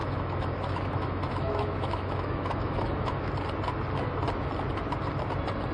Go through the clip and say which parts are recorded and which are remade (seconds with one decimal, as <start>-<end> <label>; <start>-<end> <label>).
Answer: 0.0-3.3 remade; 3.3-5.7 recorded